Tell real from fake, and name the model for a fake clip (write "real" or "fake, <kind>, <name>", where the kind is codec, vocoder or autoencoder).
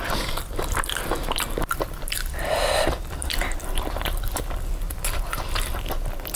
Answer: fake, vocoder, BigVGAN v2